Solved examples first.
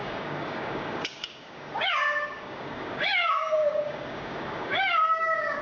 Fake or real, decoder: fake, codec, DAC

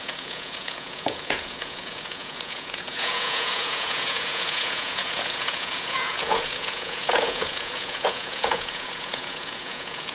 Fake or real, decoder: fake, vocoder, Vocos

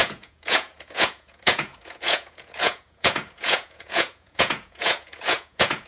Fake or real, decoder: fake, vocoder, Vocos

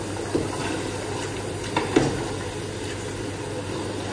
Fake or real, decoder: real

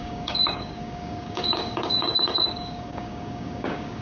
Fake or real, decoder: fake, codec, DAC